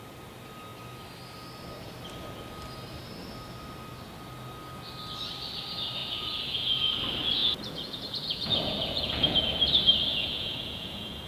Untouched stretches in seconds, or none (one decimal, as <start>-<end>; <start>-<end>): 0.0-6.0; 7.0-7.4; 9.4-10.1